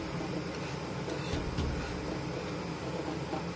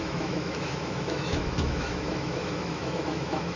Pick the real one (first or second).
first